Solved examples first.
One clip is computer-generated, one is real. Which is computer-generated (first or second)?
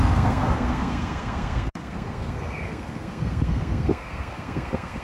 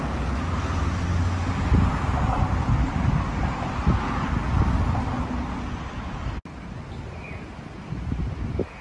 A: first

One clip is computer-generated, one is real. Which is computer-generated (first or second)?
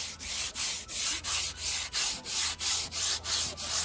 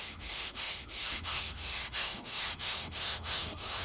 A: second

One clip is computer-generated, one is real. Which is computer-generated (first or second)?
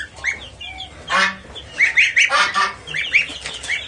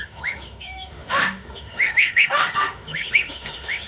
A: second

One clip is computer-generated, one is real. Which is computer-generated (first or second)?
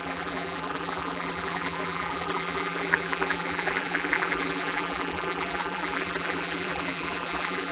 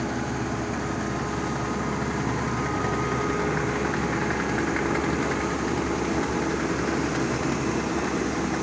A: first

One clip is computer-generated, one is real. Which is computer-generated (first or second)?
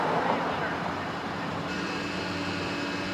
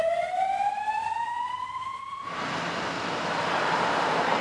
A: second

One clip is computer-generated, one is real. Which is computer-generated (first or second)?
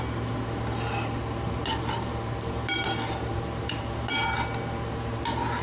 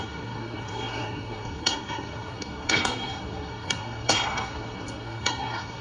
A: second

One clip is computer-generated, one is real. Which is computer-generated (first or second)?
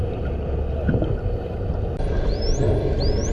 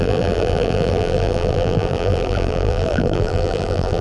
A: second